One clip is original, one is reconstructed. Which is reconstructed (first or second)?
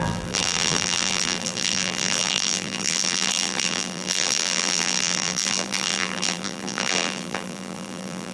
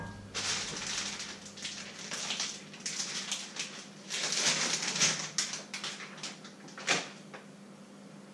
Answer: first